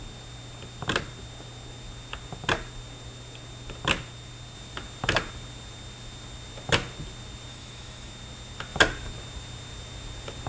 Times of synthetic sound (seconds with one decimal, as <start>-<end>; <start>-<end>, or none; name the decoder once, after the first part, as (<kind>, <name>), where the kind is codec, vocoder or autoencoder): 7.5-8.1 (autoencoder, DAC-VAE)